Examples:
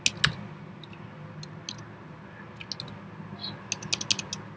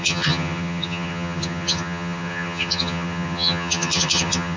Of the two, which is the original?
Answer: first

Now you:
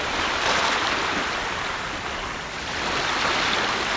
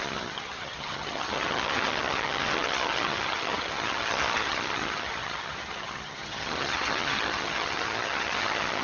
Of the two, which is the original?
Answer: first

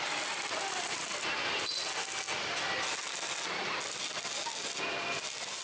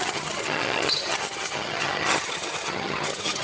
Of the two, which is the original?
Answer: first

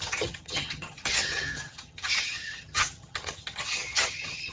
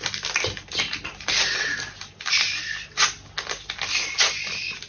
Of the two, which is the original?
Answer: second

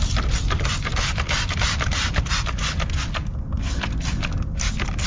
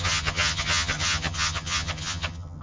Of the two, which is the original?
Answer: first